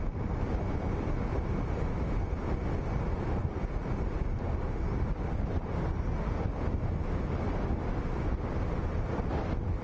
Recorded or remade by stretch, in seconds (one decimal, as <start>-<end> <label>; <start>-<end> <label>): 0.0-9.8 recorded